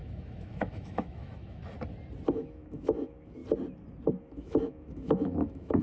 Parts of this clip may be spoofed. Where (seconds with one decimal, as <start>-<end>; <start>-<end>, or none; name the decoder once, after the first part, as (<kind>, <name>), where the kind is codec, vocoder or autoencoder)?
0.0-1.6 (autoencoder, DAC-VAE); 2.3-3.4; 4.2-5.8